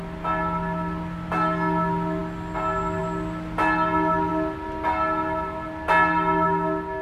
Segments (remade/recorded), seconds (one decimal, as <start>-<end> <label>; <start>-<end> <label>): 0.0-7.0 recorded